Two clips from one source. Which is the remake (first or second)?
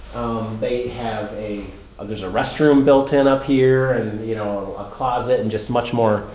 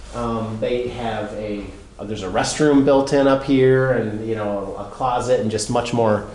first